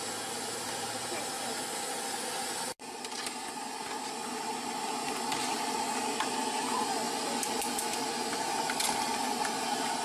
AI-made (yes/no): no